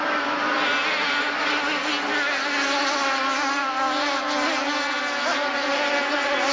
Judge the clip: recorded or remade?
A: recorded